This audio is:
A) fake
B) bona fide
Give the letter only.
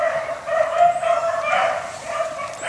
A